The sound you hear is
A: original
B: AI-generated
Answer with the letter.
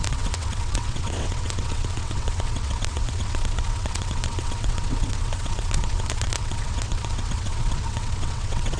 B